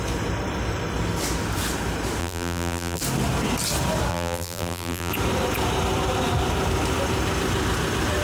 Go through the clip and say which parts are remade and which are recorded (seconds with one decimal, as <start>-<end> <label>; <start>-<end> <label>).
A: 0.0-2.2 recorded; 2.2-3.0 remade; 3.0-4.1 recorded; 4.1-5.1 remade; 5.1-8.2 recorded